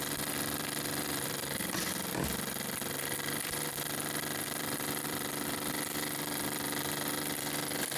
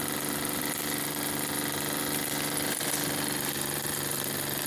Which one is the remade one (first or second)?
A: first